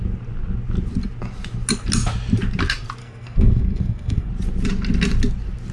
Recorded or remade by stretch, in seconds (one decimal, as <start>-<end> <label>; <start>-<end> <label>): 0.0-3.0 recorded; 3.0-4.3 remade; 4.3-5.7 recorded